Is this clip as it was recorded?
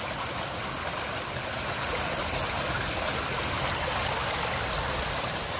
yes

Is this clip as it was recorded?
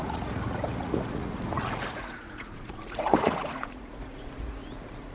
no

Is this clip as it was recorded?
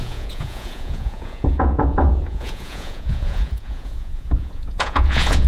no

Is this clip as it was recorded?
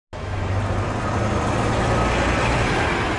yes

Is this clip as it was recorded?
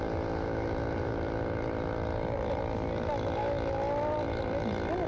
yes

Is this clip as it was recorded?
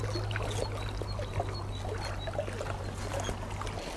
yes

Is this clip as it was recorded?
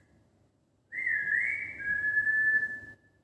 yes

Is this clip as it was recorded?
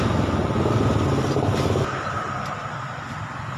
yes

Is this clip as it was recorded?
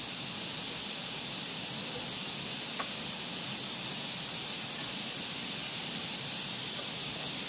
yes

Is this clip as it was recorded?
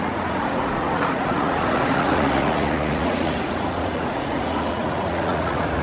no